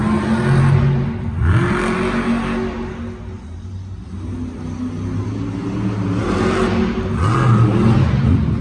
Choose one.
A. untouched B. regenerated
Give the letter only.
A